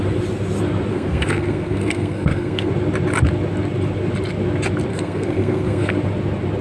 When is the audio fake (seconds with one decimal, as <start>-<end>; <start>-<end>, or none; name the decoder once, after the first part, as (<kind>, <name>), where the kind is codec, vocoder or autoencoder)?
0.9-2.7 (codec, SNAC); 4.9-5.9